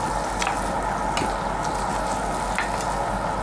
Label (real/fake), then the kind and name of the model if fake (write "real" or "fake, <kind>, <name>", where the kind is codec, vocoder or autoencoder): real